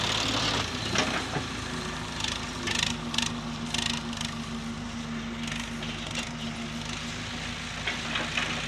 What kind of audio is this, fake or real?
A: real